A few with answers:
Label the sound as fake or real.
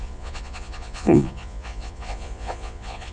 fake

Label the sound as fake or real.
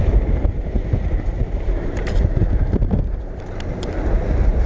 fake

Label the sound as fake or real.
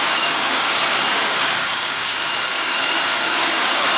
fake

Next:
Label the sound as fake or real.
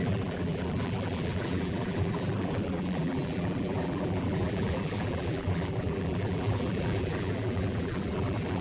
fake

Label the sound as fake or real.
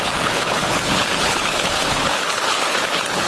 fake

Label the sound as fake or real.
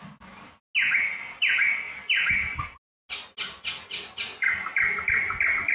real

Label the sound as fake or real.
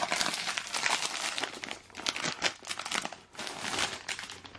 real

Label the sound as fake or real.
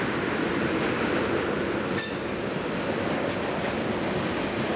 real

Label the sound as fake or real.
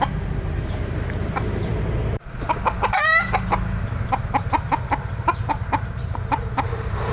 fake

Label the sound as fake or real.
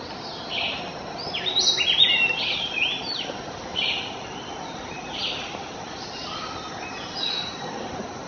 real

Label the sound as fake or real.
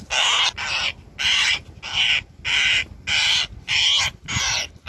real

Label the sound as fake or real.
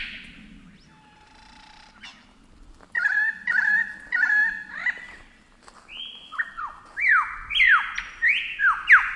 real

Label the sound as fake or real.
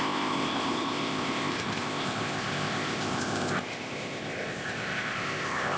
fake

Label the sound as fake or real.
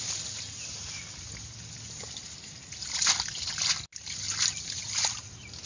real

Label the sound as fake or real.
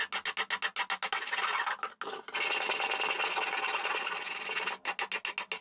real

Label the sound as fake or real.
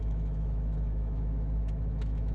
fake